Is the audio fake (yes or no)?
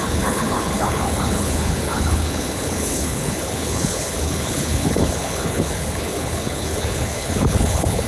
yes